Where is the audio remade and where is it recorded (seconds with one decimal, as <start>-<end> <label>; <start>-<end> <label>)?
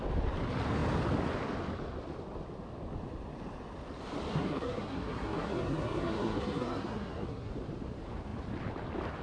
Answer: 0.0-4.3 recorded; 4.3-7.5 remade; 7.5-9.2 recorded